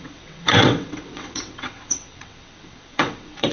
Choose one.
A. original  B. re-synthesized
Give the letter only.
B